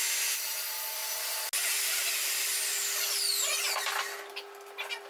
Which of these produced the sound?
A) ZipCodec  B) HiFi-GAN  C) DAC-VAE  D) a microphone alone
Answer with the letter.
D